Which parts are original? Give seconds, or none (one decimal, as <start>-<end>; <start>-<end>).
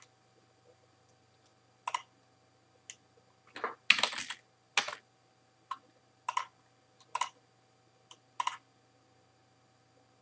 0.0-10.2